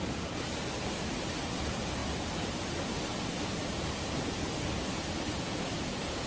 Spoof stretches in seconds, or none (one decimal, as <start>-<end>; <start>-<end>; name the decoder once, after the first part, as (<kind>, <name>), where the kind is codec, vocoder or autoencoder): none